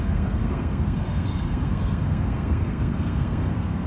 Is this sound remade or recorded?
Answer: remade